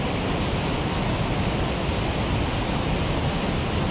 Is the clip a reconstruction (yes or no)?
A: no